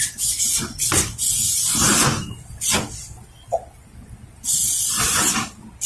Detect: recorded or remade recorded